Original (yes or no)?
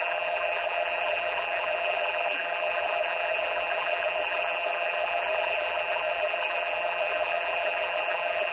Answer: no